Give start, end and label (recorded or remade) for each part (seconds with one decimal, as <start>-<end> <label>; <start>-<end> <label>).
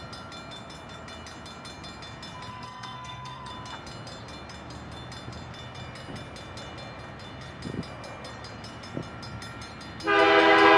0.0-2.5 recorded; 2.5-3.5 remade; 3.5-10.8 recorded